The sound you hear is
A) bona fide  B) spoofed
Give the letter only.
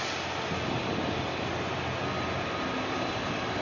A